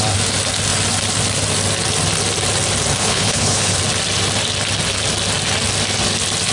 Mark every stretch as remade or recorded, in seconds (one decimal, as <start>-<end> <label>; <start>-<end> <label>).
0.0-3.0 recorded; 3.0-3.8 remade; 3.8-6.5 recorded